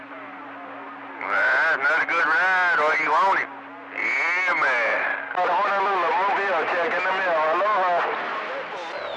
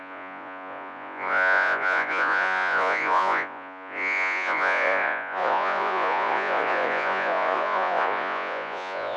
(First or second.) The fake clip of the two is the second